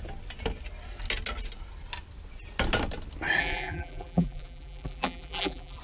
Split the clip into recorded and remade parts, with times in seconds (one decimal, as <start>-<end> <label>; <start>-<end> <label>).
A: 0.0-3.4 recorded; 3.4-5.8 remade